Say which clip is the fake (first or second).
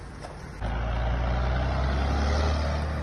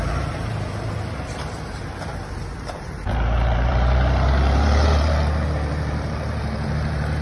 second